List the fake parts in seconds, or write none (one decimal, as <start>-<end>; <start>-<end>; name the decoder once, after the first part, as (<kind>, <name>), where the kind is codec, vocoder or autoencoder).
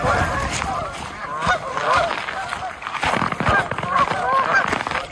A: none